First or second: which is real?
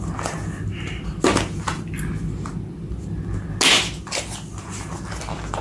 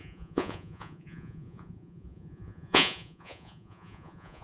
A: first